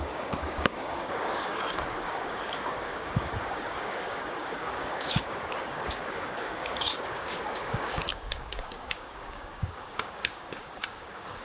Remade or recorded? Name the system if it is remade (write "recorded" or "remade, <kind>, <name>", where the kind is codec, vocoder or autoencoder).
remade, codec, DAC